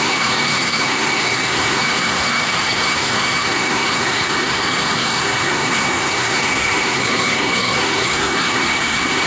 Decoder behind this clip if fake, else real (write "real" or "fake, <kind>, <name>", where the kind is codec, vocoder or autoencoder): fake, codec, SNAC